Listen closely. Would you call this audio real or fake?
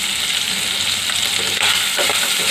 real